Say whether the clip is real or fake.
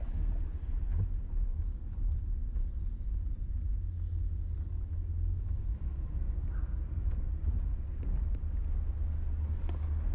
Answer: real